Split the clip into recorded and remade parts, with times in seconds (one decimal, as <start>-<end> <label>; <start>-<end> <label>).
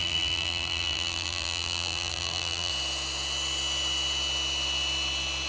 0.0-2.7 remade; 2.7-5.5 recorded